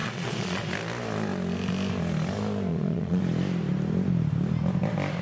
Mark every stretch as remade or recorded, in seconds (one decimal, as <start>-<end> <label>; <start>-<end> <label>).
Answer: 0.0-0.6 remade; 0.6-2.7 recorded; 2.7-3.2 remade; 3.2-5.2 recorded